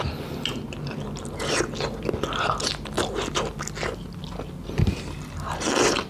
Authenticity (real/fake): real